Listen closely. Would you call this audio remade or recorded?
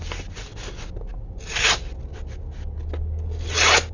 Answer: recorded